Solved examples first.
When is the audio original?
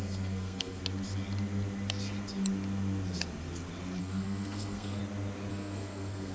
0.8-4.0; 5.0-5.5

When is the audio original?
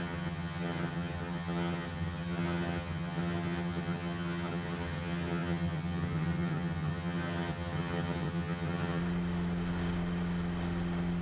9.0-11.2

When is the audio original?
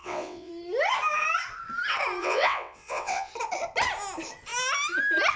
0.5-2.2; 3.3-5.4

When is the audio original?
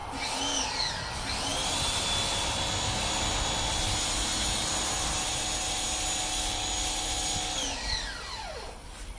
0.0-9.2